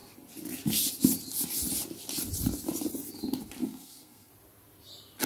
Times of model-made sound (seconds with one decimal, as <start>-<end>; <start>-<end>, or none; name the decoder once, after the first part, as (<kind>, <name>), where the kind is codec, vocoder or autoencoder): 3.6-4.3 (codec, SNAC)